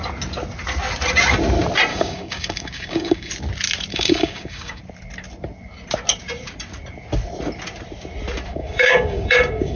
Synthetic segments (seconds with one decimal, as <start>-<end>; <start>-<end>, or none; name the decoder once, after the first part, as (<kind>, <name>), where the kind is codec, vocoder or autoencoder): 1.9-3.3 (codec, DAC); 3.9-4.8; 8.5-9.8